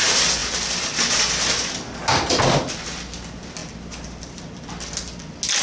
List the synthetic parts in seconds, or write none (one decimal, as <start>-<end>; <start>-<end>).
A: none